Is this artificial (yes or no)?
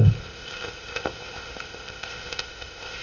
yes